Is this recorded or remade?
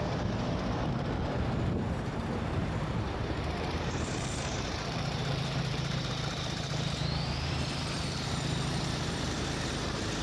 remade